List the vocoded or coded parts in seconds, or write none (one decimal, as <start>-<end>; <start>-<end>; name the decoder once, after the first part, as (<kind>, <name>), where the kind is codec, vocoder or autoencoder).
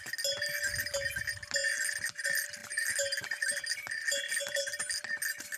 none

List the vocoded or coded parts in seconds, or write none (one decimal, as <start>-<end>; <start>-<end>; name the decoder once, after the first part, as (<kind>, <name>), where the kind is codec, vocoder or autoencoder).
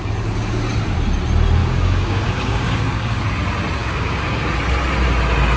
1.6-3.2 (codec, DAC); 3.8-4.5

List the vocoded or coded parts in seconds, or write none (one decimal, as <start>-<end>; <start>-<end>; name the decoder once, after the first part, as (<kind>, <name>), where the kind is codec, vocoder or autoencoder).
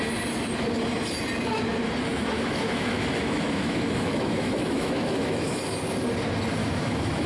2.1-5.6 (autoencoder, DAC-VAE); 6.6-7.3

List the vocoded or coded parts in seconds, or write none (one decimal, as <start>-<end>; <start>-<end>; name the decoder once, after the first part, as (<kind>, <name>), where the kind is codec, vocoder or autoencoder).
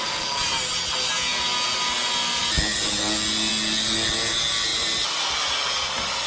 none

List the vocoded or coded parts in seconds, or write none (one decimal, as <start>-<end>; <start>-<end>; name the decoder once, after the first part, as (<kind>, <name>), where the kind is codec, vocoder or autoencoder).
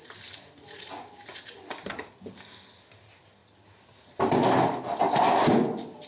none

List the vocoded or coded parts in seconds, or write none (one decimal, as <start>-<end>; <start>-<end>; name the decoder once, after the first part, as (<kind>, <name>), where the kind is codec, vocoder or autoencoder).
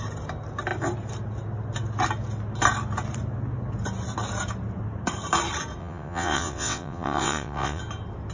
5.8-7.8 (vocoder, WaveNeXt)